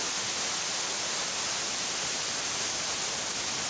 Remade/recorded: recorded